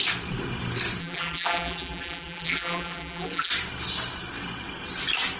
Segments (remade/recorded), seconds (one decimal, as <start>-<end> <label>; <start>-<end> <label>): 0.0-1.0 recorded; 1.0-3.5 remade; 3.5-5.4 recorded